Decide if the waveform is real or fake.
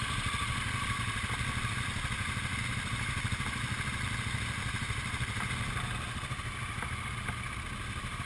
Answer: real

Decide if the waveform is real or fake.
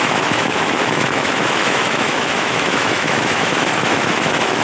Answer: fake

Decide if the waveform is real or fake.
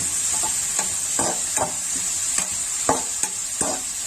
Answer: real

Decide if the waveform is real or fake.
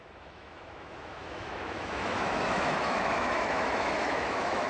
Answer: fake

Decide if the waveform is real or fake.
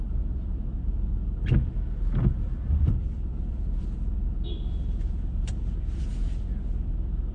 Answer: real